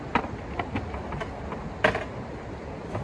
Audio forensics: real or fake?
real